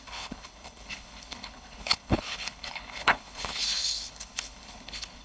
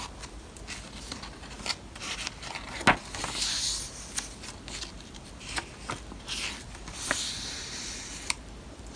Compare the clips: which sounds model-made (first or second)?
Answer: first